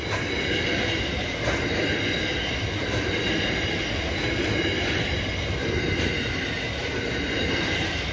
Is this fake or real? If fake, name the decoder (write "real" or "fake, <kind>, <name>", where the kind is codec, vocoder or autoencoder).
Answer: real